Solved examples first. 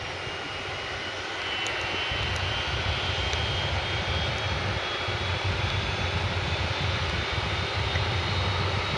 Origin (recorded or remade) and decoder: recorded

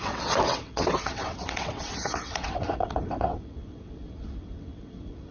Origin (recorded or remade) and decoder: remade, vocoder, WaveNeXt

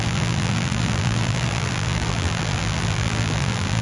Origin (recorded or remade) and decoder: remade, vocoder, BigVGAN v2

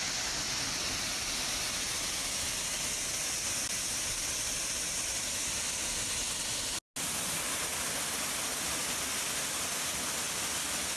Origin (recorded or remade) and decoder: recorded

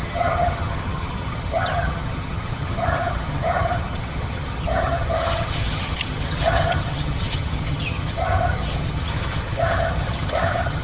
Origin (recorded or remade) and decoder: remade, vocoder, HiFi-GAN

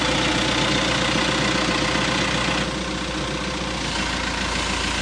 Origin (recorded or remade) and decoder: recorded